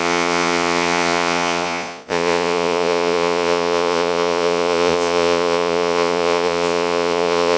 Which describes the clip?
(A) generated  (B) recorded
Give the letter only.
A